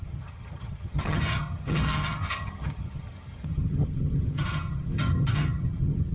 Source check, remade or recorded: remade